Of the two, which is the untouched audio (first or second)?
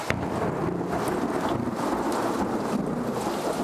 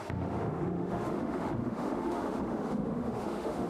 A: first